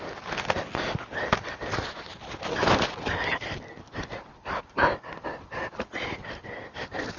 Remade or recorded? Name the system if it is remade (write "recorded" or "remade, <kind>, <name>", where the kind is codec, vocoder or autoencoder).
recorded